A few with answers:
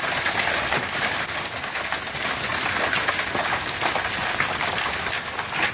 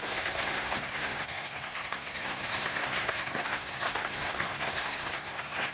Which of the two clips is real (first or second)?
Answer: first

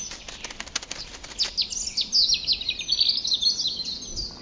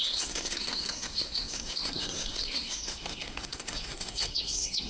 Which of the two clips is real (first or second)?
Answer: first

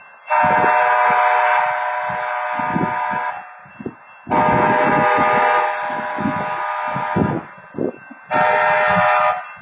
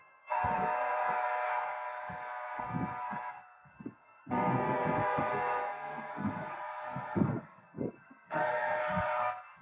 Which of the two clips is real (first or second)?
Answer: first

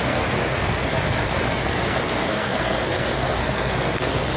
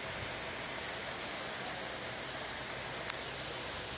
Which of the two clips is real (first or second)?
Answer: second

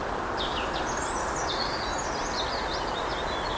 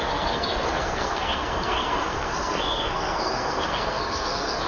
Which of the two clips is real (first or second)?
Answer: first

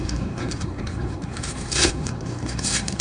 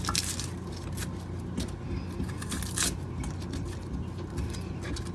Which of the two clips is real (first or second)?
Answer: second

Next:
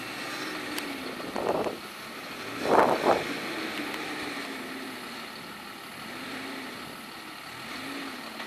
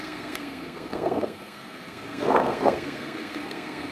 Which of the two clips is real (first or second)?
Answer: first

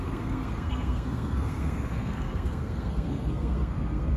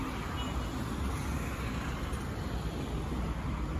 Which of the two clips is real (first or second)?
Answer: second